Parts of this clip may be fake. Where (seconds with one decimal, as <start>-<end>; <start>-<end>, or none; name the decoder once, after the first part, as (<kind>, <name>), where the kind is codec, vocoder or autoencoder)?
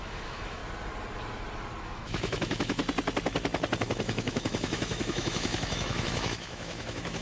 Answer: 0.0-0.6 (autoencoder, DAC-VAE); 1.8-2.8; 3.8-7.2